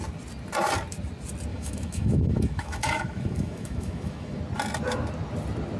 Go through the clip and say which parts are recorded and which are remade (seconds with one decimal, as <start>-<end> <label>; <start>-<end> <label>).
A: 0.0-1.5 recorded; 1.5-4.4 remade; 4.4-5.8 recorded